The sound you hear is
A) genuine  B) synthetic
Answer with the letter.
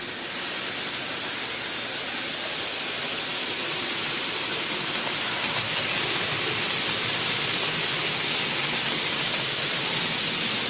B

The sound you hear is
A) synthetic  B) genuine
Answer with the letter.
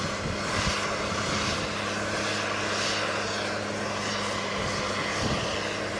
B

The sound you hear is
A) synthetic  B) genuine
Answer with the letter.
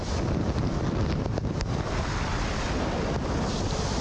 B